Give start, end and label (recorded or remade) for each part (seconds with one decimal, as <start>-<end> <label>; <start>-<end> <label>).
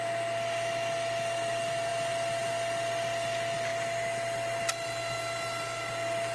0.0-6.3 recorded